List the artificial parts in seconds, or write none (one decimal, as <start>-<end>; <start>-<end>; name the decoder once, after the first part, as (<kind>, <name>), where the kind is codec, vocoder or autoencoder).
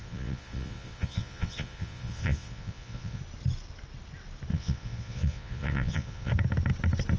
0.0-3.2 (vocoder, Vocos); 4.5-6.3